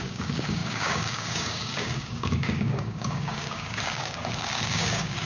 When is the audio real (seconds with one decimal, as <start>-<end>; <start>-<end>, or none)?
none